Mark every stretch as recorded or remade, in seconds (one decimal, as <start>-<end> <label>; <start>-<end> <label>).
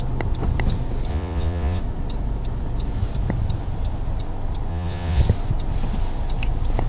0.0-1.1 recorded; 1.1-1.8 remade; 1.8-4.7 recorded; 4.7-5.2 remade; 5.2-6.9 recorded